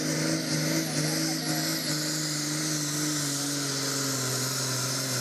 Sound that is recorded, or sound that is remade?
recorded